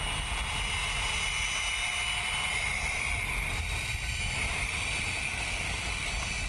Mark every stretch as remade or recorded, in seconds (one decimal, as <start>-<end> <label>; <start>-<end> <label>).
0.0-1.7 recorded; 1.7-5.6 remade; 5.6-6.5 recorded